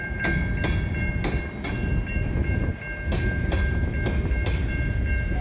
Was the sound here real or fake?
real